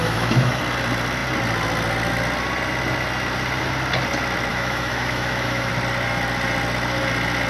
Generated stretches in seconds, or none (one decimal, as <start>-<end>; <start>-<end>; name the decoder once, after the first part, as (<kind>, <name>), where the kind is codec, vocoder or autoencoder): 0.0-0.6 (autoencoder, DAC-VAE); 4.5-5.7